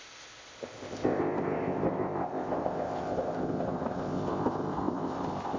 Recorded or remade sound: remade